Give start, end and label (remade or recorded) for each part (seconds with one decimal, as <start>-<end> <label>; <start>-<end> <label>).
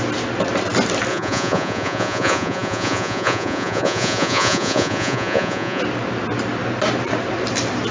0.0-1.1 recorded; 1.1-5.8 remade; 5.8-7.9 recorded